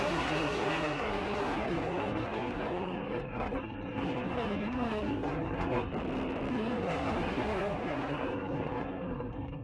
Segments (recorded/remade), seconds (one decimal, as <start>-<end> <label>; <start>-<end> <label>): 0.0-5.9 remade; 5.9-6.5 recorded; 6.5-9.6 remade

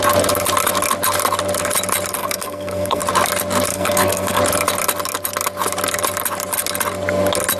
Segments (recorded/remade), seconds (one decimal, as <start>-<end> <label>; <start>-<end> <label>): 0.0-2.2 recorded; 2.2-3.0 remade; 3.0-3.7 recorded; 3.7-4.4 remade; 4.4-7.6 recorded

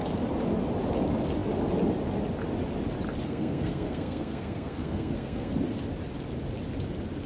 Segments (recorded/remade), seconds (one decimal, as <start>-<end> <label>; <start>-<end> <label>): 0.0-3.2 recorded; 3.2-5.5 remade; 5.5-7.3 recorded

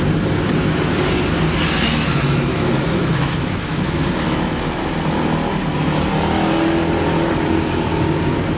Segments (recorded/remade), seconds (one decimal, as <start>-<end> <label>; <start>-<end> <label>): 0.0-2.5 recorded; 2.5-4.8 remade; 4.8-8.6 recorded

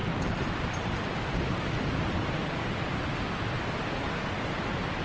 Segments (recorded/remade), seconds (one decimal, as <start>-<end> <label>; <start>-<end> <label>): 0.0-5.0 recorded